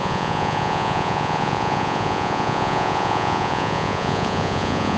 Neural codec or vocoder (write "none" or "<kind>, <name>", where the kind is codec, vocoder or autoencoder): vocoder, Vocos